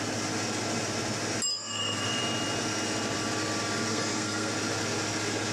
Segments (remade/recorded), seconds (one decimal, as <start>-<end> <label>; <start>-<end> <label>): 0.0-1.5 recorded; 1.5-2.2 remade; 2.2-3.9 recorded; 3.9-4.5 remade; 4.5-5.5 recorded